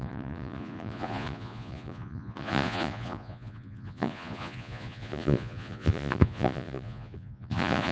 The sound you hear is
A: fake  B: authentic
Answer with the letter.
A